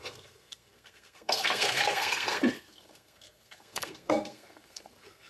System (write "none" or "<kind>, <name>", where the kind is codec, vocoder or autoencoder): codec, SNAC